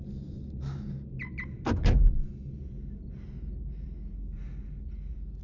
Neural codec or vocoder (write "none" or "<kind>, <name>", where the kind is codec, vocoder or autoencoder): none